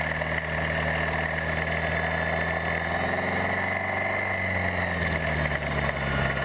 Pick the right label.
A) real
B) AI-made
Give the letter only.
A